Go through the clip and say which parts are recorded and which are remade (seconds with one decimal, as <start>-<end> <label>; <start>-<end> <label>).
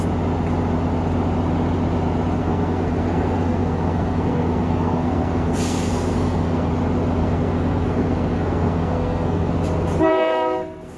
0.0-2.4 recorded; 2.4-6.7 remade; 6.7-7.2 recorded; 7.2-9.5 remade; 9.5-10.1 recorded; 10.1-11.0 remade